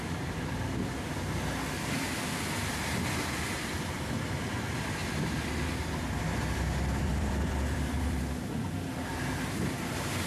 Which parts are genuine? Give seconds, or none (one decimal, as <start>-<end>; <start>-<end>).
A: none